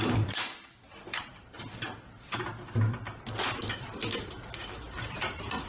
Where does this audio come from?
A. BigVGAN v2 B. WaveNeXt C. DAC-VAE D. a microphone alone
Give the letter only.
A